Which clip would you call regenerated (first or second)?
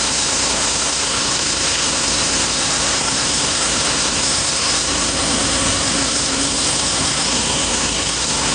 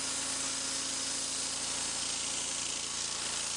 first